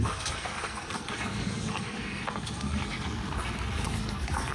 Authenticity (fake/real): fake